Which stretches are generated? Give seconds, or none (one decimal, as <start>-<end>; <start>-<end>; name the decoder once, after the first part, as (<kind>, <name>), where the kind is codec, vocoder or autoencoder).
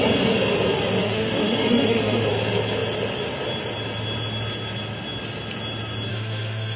1.0-2.3 (autoencoder, DAC-VAE); 6.1-6.8